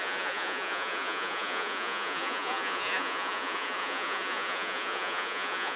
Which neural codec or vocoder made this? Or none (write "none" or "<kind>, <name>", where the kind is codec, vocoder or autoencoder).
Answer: vocoder, Vocos